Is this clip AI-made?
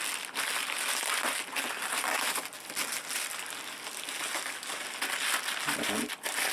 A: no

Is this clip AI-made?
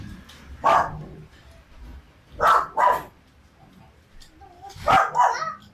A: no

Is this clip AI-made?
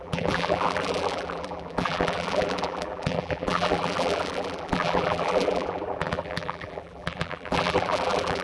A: yes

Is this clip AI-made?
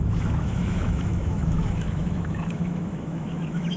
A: yes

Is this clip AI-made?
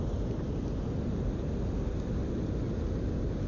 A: no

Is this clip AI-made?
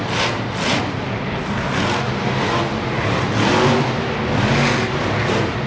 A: no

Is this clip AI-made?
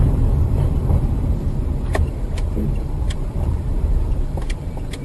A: yes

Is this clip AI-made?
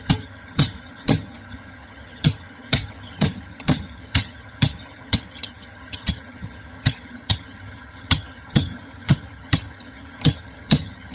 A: yes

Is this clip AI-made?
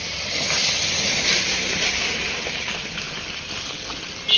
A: no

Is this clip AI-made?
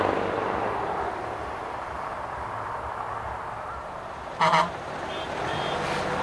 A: no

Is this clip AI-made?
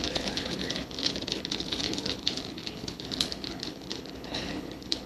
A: yes